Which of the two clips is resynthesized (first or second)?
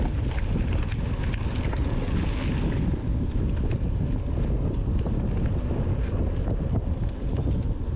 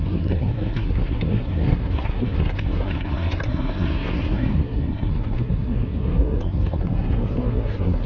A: second